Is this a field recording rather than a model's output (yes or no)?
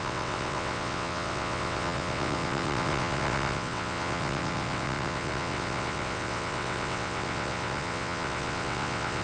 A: no